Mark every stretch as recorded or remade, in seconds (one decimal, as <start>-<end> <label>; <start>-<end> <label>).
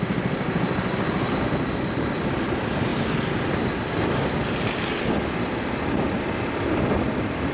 0.0-7.5 recorded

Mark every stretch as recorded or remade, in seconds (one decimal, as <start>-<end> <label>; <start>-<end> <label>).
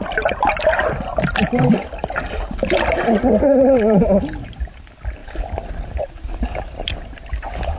0.0-7.8 recorded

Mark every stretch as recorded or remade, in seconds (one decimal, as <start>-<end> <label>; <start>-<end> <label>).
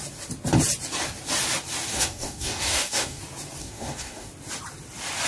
0.0-1.9 recorded; 1.9-3.2 remade; 3.2-3.6 recorded; 3.6-4.3 remade; 4.3-5.3 recorded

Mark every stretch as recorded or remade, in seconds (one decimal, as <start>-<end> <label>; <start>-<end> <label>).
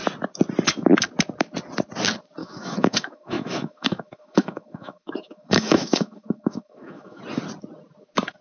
0.0-2.4 recorded; 2.4-7.2 remade; 7.2-8.4 recorded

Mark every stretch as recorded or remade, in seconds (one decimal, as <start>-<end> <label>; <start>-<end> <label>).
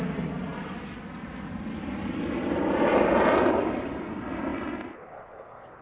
0.0-5.8 recorded